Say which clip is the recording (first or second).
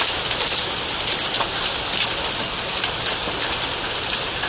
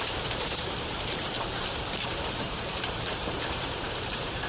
first